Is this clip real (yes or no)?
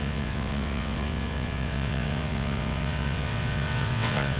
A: no